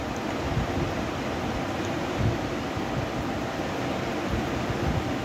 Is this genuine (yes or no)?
yes